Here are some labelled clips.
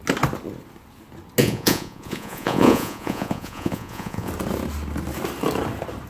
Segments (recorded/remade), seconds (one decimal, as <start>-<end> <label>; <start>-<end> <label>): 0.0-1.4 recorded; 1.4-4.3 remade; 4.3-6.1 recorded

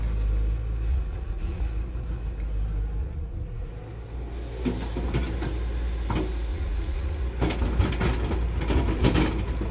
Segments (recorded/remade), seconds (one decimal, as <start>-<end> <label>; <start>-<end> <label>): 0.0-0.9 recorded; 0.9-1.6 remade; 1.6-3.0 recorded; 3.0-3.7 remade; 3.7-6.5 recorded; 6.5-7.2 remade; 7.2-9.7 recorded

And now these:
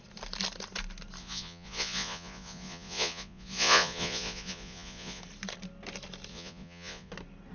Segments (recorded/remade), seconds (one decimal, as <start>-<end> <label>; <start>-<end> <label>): 0.0-1.2 recorded; 1.2-5.2 remade; 5.2-6.3 recorded; 6.3-7.1 remade; 7.1-7.5 recorded

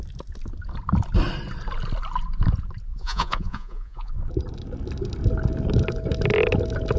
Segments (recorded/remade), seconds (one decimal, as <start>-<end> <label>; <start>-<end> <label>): 0.0-2.9 recorded; 2.9-4.1 remade; 4.1-7.0 recorded